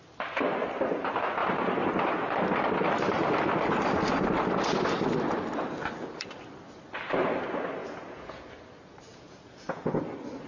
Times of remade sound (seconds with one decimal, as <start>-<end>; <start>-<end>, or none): 7.8-8.5; 9.1-10.0